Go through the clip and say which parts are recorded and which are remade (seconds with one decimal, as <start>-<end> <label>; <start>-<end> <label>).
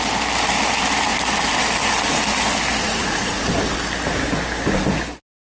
0.0-2.8 recorded; 2.8-3.4 remade; 3.4-5.4 recorded